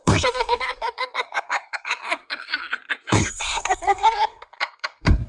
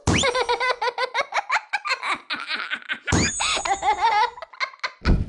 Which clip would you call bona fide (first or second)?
second